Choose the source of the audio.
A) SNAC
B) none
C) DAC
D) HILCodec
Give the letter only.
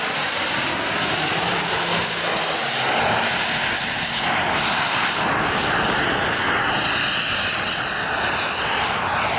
B